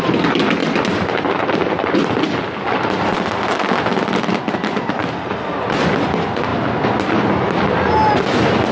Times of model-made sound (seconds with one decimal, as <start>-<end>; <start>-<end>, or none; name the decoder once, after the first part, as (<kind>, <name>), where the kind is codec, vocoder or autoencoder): 0.6-1.7 (vocoder, BigVGAN v2); 3.9-4.4